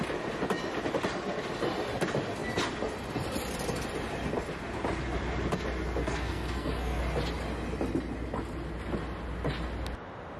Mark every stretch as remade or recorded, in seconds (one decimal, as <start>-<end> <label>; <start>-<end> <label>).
0.0-6.0 recorded; 6.0-7.0 remade; 7.0-10.4 recorded